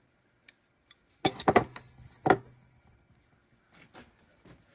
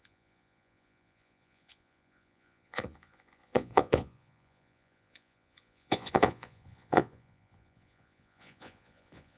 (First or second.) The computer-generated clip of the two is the second